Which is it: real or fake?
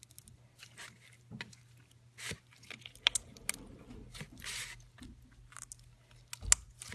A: real